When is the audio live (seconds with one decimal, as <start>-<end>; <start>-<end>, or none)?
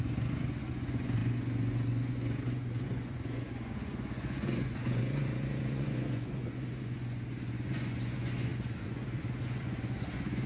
none